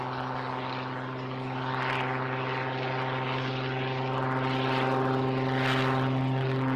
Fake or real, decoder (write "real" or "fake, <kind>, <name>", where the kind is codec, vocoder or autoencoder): real